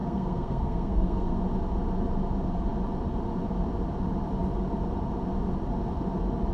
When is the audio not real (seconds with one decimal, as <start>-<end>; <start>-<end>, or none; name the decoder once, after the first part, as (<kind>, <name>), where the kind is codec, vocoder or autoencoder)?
0.0-1.4 (codec, SNAC)